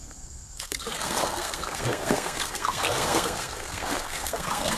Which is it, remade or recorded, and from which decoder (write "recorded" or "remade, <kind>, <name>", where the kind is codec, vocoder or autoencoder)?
remade, codec, SNAC